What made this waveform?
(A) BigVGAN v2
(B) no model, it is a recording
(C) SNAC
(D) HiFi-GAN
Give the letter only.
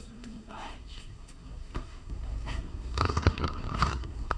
C